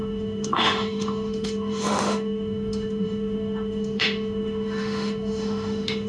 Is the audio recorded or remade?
remade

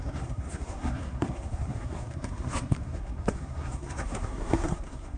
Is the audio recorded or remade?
remade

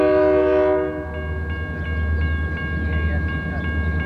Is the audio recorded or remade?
recorded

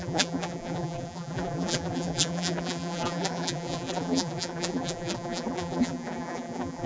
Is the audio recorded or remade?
remade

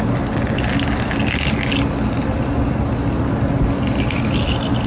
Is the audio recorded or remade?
recorded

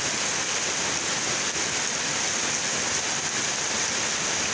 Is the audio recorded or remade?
recorded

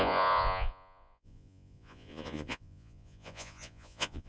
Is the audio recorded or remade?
remade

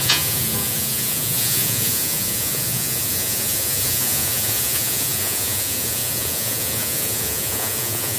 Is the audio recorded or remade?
remade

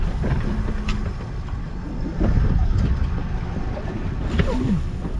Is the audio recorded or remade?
recorded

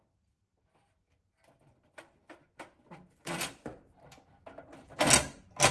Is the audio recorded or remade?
recorded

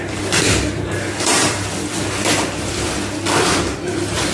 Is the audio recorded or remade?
remade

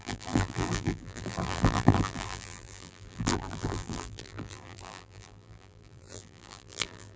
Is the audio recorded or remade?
remade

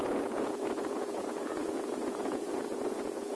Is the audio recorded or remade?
remade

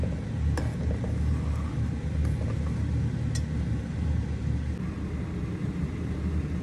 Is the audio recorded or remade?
recorded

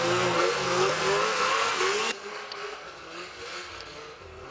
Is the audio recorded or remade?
remade